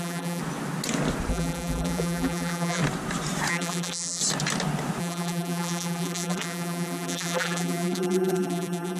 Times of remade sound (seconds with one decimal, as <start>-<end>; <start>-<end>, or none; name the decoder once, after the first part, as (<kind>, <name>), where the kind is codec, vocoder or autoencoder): 0.0-0.4 (vocoder, BigVGAN v2); 1.3-2.8; 3.5-4.2; 5.0-9.0